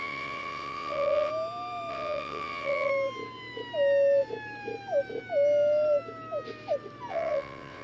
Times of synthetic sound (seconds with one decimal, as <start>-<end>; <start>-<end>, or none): 0.0-1.3; 1.9-2.9; 7.1-7.8